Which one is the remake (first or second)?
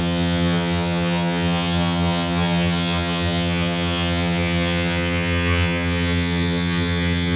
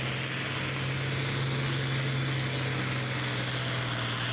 first